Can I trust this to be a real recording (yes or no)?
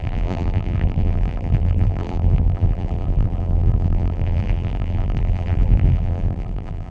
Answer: no